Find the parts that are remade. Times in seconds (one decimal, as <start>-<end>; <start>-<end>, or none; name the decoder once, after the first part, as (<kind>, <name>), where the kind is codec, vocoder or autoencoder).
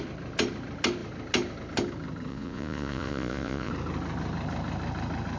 2.3-3.7 (vocoder, Vocos)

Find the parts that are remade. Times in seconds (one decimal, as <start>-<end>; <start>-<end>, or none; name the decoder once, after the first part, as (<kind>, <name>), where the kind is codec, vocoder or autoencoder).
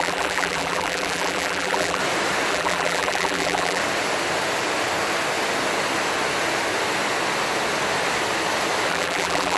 0.0-2.0 (vocoder, BigVGAN v2); 2.5-3.8; 8.9-9.6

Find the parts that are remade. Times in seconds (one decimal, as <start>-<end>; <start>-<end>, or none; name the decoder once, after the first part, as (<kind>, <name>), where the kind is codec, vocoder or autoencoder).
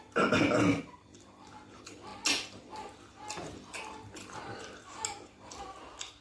none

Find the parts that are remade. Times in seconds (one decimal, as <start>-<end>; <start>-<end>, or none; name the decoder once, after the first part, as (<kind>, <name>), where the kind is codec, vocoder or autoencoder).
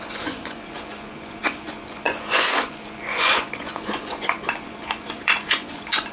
0.0-6.1 (vocoder, Vocos)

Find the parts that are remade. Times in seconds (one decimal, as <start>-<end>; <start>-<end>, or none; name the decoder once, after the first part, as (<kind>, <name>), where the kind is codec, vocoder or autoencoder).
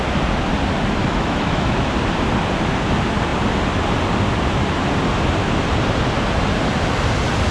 1.0-1.9 (autoencoder, DAC-VAE)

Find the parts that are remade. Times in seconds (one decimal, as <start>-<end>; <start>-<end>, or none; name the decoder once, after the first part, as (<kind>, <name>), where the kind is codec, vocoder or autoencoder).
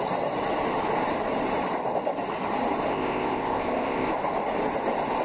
2.9-4.1 (codec, ZipCodec)